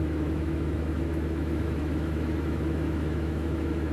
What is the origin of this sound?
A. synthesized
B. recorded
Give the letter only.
A